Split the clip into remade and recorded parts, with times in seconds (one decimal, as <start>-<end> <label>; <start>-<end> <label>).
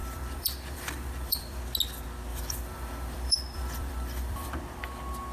0.0-1.6 remade; 1.6-2.3 recorded; 2.3-4.5 remade; 4.5-5.3 recorded